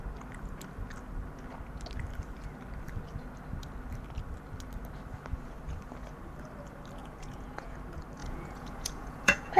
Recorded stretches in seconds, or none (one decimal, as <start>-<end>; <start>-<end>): 0.0-7.0; 7.7-8.2